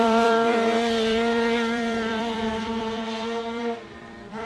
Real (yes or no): no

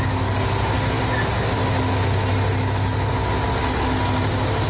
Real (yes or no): yes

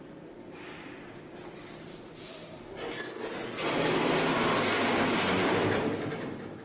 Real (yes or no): no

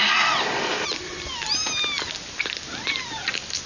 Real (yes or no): yes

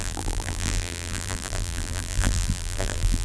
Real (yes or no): no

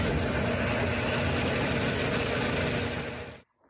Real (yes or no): yes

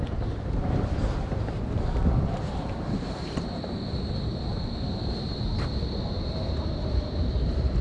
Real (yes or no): no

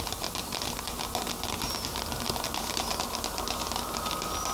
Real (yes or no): yes